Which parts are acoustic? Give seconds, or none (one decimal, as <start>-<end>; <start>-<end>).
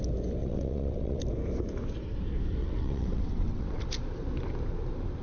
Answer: 0.0-0.4; 1.2-2.6; 3.8-5.2